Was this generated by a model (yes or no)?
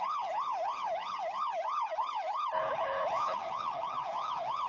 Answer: yes